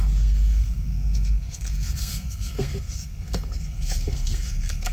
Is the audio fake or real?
fake